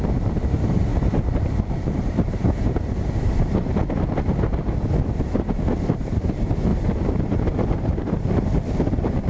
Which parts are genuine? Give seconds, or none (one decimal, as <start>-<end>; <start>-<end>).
3.8-5.8